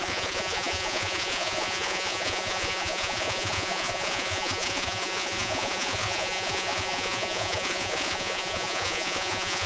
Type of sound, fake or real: fake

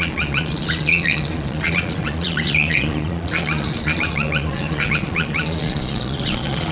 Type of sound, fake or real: fake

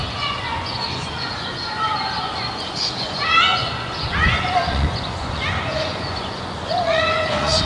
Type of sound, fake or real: fake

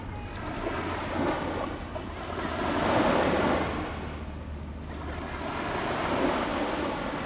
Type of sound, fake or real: real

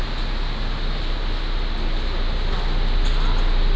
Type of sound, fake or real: real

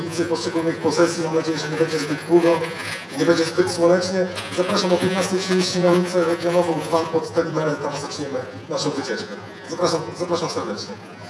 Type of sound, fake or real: fake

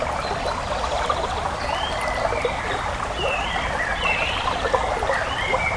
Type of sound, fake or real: real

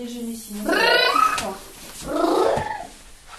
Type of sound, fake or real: real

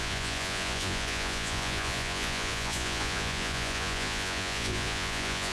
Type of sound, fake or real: fake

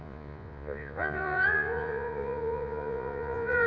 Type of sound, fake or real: fake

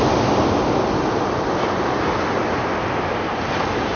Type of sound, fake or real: real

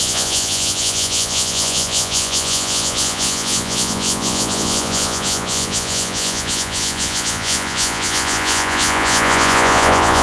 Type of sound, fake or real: fake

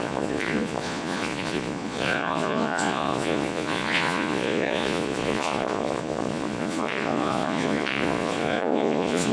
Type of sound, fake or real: fake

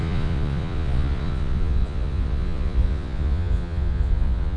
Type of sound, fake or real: fake